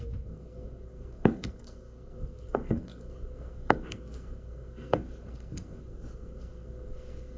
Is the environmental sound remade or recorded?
remade